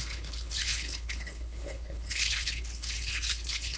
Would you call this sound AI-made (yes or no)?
yes